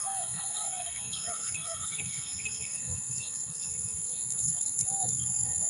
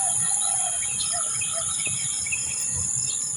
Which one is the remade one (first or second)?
first